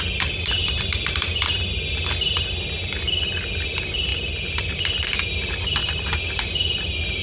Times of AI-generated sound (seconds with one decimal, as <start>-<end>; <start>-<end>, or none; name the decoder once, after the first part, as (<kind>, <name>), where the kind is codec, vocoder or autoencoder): 0.6-1.5 (vocoder, BigVGAN v2); 4.1-4.8; 5.8-7.2